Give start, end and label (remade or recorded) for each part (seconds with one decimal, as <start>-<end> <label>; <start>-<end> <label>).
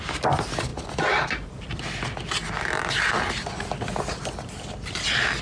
0.0-5.4 recorded